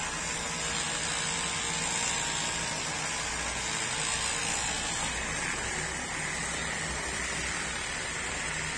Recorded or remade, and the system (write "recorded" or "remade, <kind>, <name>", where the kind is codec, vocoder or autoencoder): recorded